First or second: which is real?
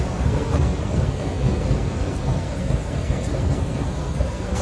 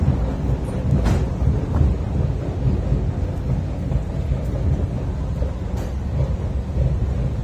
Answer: second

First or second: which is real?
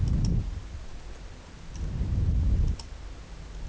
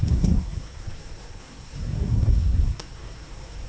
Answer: first